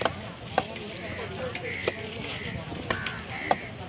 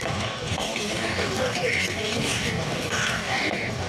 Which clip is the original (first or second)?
first